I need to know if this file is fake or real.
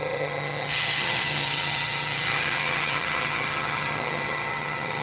fake